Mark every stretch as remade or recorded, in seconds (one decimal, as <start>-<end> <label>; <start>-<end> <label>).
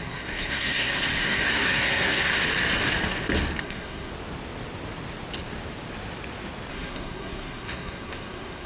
0.0-2.3 remade; 2.3-3.6 recorded; 3.6-4.1 remade; 4.1-6.7 recorded; 6.7-8.7 remade